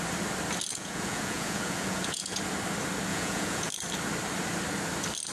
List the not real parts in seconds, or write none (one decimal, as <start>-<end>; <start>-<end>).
0.7-2.4; 3.1-3.7